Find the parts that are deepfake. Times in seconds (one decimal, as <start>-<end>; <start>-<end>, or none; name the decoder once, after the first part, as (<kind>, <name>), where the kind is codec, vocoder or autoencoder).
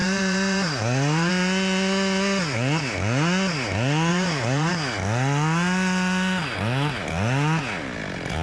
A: 0.0-1.3 (vocoder, BigVGAN v2); 4.1-4.7